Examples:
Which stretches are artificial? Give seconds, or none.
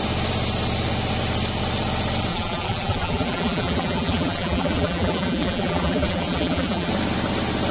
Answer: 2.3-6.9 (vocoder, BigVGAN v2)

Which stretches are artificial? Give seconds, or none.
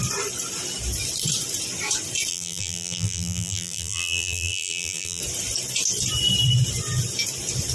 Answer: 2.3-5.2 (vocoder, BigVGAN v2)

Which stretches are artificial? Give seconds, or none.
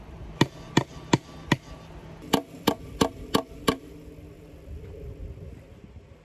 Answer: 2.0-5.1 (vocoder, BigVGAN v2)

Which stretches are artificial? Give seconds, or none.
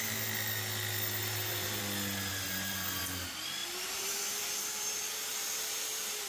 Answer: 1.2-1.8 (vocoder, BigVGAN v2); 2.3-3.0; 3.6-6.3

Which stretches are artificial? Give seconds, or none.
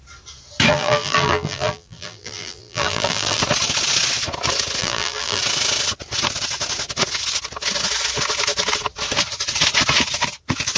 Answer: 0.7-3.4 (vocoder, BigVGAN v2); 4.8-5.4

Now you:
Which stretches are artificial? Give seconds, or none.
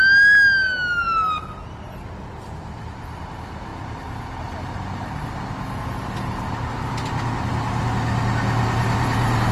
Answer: 1.6-2.2 (vocoder, BigVGAN v2)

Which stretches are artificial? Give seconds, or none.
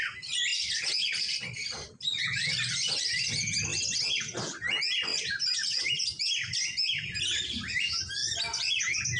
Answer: 0.5-1.2 (vocoder, BigVGAN v2); 5.1-5.8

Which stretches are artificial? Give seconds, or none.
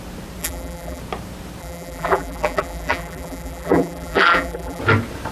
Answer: 0.4-1.0 (vocoder, BigVGAN v2); 1.6-4.8